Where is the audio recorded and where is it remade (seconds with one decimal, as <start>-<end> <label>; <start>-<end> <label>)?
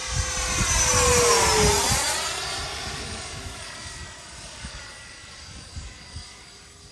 0.0-2.7 recorded; 2.7-6.9 remade